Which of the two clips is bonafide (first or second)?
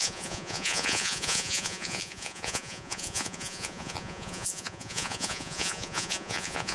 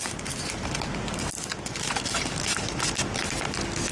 second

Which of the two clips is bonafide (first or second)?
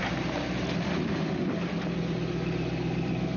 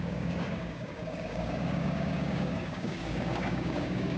first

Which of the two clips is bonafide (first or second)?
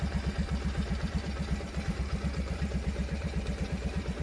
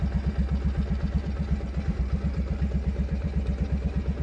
second